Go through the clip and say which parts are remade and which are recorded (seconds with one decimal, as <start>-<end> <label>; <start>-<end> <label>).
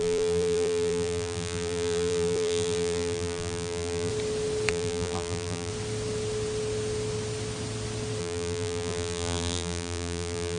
0.0-4.1 remade; 4.1-4.7 recorded; 4.7-5.7 remade; 5.7-8.2 recorded; 8.2-10.6 remade